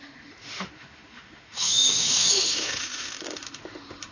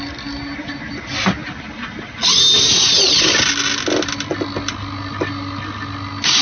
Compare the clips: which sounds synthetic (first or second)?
first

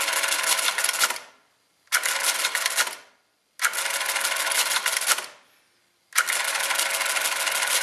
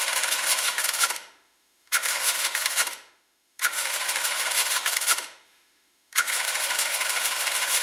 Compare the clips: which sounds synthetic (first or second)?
second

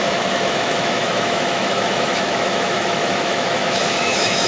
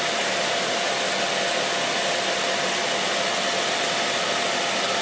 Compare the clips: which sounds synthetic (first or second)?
first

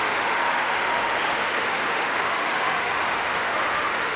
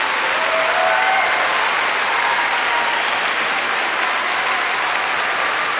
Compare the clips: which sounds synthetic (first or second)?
first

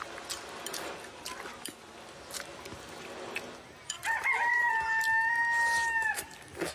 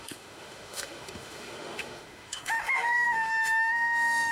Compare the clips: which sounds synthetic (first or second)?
second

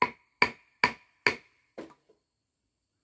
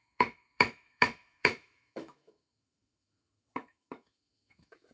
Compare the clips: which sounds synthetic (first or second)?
second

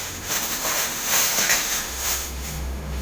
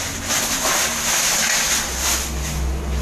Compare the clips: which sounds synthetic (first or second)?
first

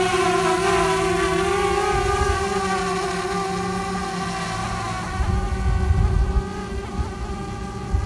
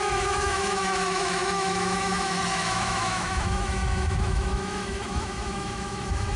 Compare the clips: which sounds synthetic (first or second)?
second